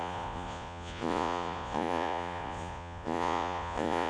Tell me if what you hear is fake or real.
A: fake